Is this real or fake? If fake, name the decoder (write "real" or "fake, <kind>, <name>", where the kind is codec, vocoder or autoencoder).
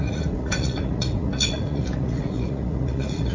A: fake, vocoder, Vocos